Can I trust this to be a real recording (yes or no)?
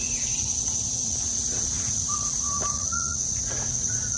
no